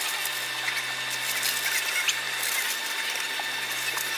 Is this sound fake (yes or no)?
no